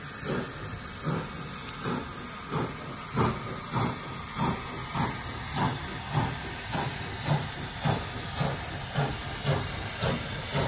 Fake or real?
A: real